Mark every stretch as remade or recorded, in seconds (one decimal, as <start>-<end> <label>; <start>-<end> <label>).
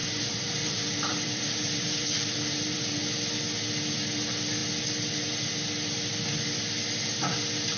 0.0-3.0 remade; 3.0-7.8 recorded